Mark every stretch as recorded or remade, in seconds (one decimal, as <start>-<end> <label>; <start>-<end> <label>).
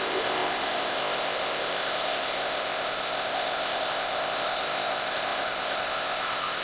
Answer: 0.0-6.6 remade